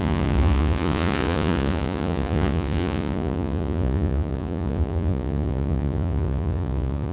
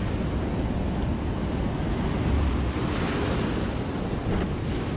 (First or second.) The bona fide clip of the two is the second